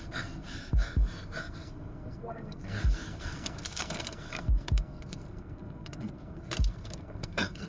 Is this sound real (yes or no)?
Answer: no